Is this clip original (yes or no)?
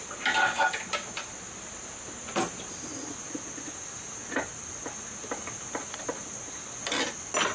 yes